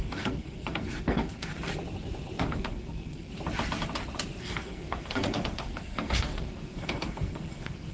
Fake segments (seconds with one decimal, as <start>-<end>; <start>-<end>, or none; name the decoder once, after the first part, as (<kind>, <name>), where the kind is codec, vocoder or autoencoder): 0.0-1.5 (codec, SNAC); 2.4-3.3; 4.4-7.9

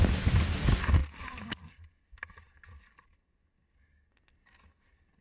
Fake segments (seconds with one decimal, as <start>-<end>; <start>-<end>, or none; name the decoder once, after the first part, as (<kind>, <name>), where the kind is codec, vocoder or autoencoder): none

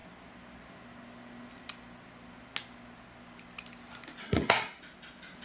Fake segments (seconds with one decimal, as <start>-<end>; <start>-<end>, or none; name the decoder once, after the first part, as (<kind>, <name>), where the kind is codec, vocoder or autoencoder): 4.2-4.8 (codec, SNAC)